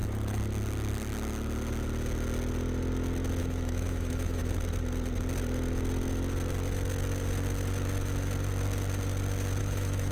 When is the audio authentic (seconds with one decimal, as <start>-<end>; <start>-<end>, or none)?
0.0-3.4; 4.4-9.6